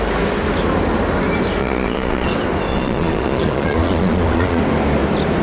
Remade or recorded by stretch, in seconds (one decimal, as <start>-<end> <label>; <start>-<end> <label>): 0.0-1.6 recorded; 1.6-2.3 remade; 2.3-2.7 recorded; 2.7-4.6 remade; 4.6-5.4 recorded